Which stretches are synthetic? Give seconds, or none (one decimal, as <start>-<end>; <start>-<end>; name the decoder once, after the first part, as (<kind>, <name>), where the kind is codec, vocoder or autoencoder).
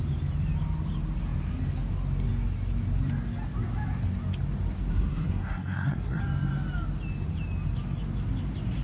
4.9-6.2 (codec, SNAC)